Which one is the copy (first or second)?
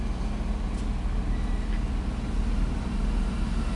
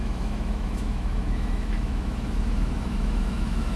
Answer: second